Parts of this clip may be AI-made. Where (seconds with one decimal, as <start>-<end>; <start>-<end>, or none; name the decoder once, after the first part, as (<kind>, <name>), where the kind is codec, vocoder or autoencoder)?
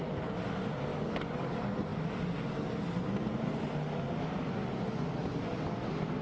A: 0.9-1.5 (codec, DAC)